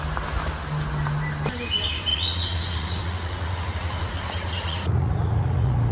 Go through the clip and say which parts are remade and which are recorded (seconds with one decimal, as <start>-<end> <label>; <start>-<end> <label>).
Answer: 0.0-2.1 recorded; 2.1-5.9 remade